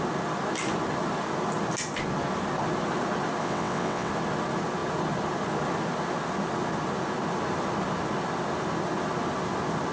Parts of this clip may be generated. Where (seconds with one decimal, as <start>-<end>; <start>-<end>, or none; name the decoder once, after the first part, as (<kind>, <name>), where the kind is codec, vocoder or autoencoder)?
3.4-4.1 (vocoder, WaveNeXt)